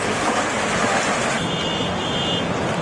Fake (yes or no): no